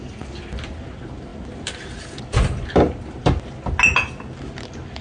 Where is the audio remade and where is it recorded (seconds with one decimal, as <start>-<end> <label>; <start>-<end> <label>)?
0.0-5.0 recorded